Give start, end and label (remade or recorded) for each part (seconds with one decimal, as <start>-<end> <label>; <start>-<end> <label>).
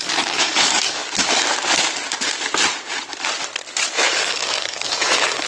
0.0-1.0 remade; 1.0-4.1 recorded; 4.1-5.5 remade